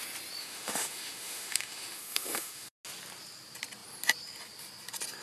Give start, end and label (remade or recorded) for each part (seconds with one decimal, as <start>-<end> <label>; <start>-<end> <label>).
0.0-0.4 recorded; 0.4-2.8 remade; 2.8-5.2 recorded